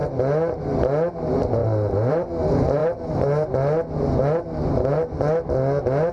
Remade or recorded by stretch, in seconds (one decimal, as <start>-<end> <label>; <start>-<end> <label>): 0.0-6.1 recorded